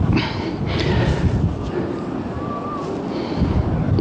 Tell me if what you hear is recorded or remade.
recorded